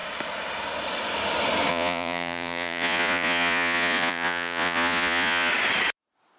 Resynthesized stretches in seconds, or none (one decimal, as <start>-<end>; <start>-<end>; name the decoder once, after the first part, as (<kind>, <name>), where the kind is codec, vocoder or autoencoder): 1.7-5.5 (vocoder, Vocos)